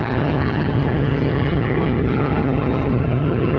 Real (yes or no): no